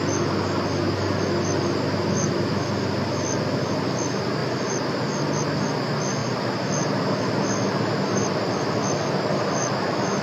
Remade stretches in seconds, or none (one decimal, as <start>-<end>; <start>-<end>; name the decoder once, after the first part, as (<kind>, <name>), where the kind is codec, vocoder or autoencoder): none